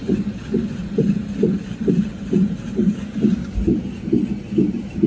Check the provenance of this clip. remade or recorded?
recorded